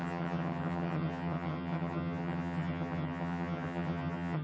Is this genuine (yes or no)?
no